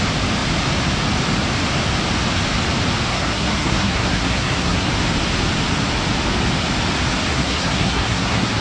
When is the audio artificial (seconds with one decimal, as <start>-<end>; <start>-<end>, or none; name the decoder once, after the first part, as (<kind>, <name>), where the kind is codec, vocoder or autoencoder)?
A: 3.1-4.9 (codec, SNAC); 7.3-8.6